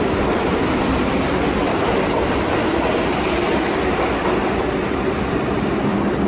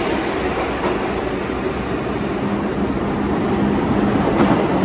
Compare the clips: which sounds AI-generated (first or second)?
first